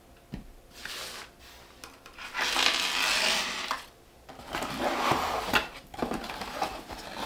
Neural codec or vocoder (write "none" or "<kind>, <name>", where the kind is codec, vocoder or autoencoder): none